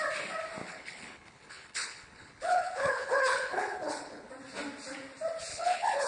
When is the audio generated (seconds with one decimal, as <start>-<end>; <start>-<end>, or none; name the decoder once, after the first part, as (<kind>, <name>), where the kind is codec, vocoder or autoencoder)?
0.6-4.3 (codec, HILCodec); 5.5-6.1

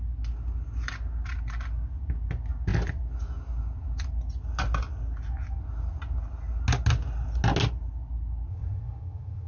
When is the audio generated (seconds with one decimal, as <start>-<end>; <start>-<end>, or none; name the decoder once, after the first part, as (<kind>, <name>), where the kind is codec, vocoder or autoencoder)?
8.5-9.5 (vocoder, HiFi-GAN)